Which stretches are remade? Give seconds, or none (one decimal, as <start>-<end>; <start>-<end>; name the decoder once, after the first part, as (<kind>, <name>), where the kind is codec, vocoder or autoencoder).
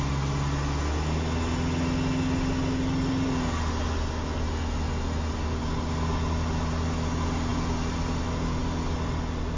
none